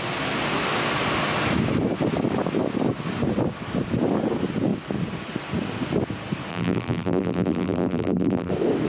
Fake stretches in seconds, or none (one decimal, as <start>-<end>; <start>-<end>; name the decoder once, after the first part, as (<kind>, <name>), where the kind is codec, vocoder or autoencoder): 6.5-8.5 (vocoder, BigVGAN v2)